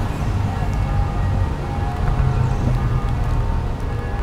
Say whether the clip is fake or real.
real